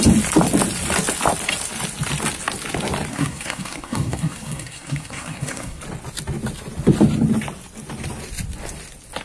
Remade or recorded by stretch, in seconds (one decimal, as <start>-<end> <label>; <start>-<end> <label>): 0.0-3.1 recorded; 3.1-5.8 remade; 5.8-9.2 recorded